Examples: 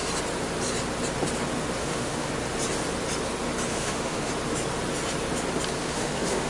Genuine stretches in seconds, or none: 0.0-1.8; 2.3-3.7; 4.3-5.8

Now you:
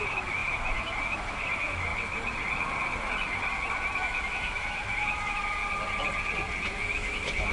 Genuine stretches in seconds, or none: 1.9-4.0; 5.6-6.7

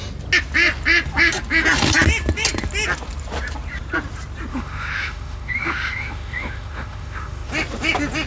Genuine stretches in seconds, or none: 0.0-4.5; 7.5-8.3

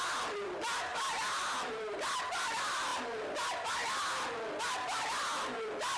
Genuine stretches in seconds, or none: 0.0-6.0

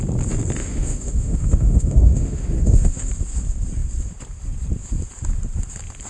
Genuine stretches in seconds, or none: 0.0-0.6; 3.1-6.1